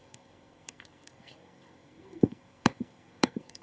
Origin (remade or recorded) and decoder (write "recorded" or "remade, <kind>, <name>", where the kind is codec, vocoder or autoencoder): remade, codec, SNAC